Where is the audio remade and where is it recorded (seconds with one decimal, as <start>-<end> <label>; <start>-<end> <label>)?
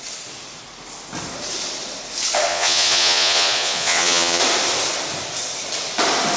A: 0.0-2.5 recorded; 2.5-4.4 remade; 4.4-6.4 recorded